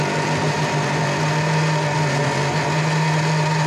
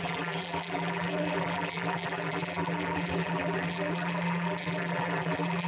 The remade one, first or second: second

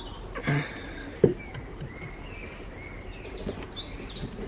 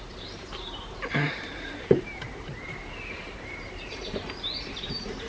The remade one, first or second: second